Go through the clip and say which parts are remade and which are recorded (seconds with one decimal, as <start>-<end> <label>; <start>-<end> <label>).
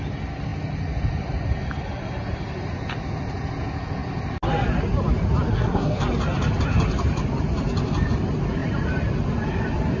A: 0.0-5.5 recorded; 5.5-6.0 remade; 6.0-10.0 recorded